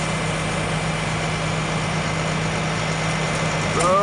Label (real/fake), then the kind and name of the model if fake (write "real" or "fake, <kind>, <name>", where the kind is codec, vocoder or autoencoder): real